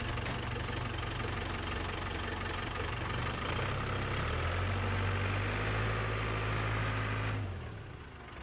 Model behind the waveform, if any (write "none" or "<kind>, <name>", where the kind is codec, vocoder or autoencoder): none